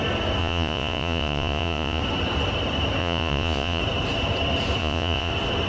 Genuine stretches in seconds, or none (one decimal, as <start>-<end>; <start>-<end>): 0.0-0.4; 2.0-3.0; 3.8-4.8; 5.3-5.7

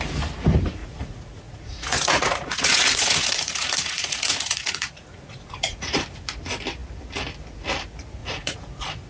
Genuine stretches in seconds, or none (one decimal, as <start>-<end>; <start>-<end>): 0.0-0.8; 6.0-8.2

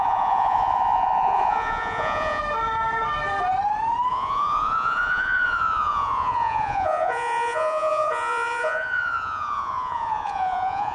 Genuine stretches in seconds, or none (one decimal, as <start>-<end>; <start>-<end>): 2.4-4.1